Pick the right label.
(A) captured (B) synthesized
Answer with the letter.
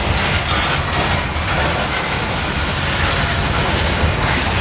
A